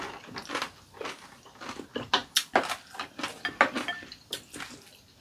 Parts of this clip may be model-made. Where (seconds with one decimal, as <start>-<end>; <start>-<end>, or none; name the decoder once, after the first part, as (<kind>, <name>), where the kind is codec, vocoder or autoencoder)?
none